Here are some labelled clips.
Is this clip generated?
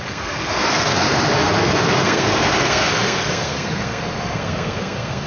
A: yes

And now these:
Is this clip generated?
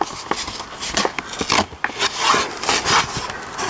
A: no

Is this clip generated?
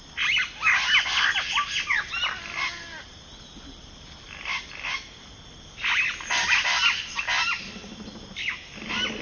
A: no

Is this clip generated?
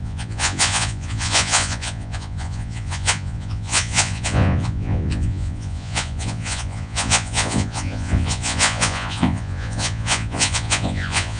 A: yes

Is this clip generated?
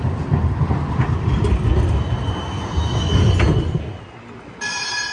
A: no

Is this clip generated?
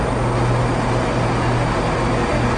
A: no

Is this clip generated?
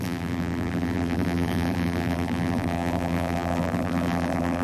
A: yes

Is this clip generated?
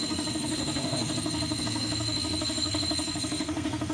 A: yes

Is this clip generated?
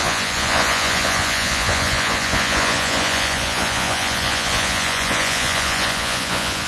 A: yes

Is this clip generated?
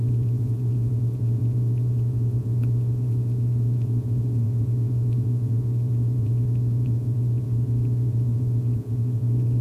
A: yes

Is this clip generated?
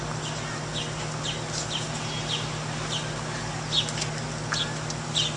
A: no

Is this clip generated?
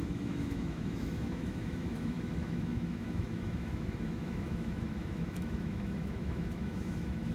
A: yes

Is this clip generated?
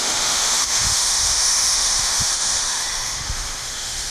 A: yes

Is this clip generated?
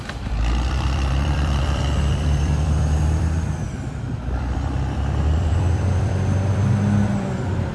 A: yes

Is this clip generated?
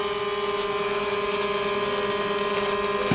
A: no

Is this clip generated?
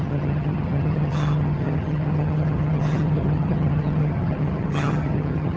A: yes